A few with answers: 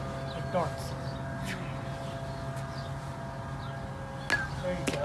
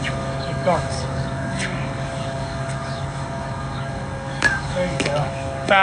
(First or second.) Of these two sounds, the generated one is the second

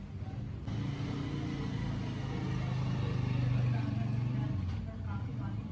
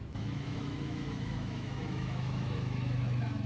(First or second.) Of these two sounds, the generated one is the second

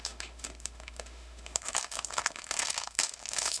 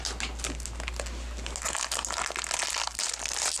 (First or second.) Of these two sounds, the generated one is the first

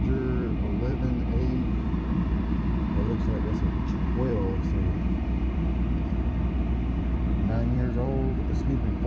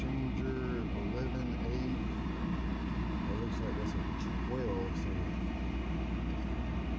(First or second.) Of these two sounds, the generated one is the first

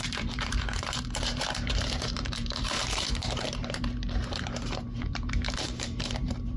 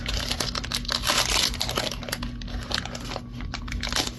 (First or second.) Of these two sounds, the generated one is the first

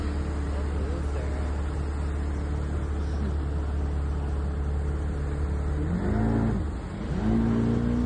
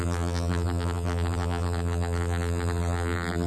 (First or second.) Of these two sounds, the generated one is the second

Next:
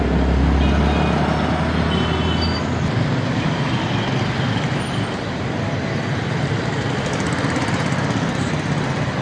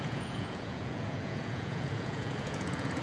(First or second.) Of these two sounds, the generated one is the second